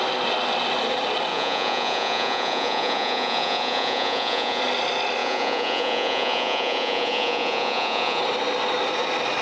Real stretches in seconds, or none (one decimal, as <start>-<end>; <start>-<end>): 0.0-1.3; 4.6-5.2; 8.2-9.4